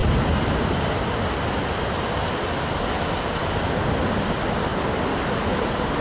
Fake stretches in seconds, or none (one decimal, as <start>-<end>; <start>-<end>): none